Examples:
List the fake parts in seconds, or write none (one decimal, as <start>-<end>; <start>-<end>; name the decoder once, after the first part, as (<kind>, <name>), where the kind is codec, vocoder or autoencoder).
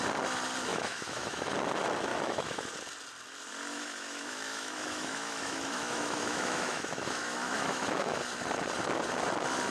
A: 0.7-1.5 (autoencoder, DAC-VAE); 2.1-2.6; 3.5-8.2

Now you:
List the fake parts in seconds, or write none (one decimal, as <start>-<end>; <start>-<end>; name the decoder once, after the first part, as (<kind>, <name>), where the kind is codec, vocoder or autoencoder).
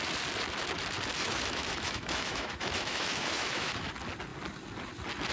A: 1.2-3.9 (autoencoder, DAC-VAE)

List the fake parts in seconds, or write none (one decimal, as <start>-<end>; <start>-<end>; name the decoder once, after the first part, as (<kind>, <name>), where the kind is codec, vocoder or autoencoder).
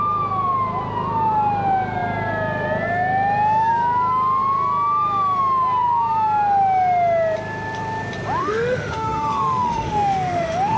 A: 8.4-10.8 (autoencoder, DAC-VAE)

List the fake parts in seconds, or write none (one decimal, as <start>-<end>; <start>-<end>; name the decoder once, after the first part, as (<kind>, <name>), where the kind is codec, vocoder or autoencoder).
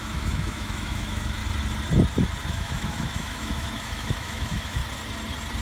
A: 0.0-1.4 (autoencoder, DAC-VAE); 2.5-4.8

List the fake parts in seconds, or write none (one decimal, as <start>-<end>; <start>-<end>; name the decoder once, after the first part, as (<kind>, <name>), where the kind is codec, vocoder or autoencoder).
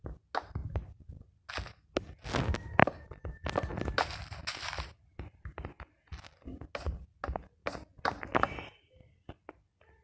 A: none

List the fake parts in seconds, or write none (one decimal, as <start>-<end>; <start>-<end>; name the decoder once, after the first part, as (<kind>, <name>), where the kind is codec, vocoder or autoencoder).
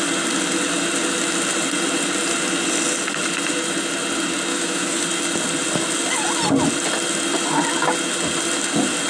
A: 4.5-5.0 (autoencoder, DAC-VAE)